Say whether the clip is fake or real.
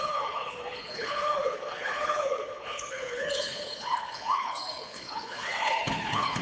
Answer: fake